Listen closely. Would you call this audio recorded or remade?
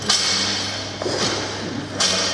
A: recorded